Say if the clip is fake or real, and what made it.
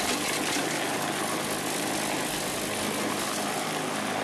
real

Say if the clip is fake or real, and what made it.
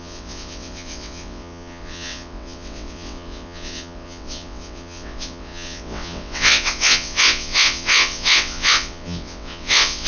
fake, vocoder, WaveNeXt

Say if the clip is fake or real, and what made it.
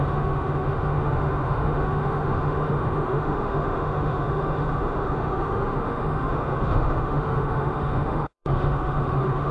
fake, autoencoder, DAC-VAE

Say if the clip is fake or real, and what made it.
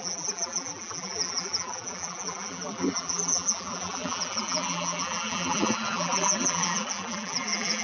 fake, vocoder, BigVGAN v2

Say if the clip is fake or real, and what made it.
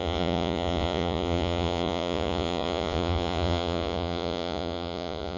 fake, vocoder, Vocos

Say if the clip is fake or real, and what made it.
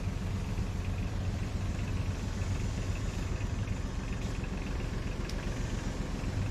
real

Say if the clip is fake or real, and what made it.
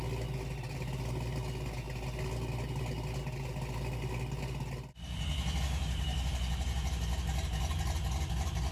real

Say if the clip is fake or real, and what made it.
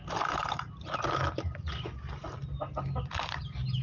real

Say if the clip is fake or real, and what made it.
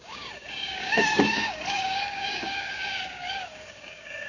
fake, codec, DAC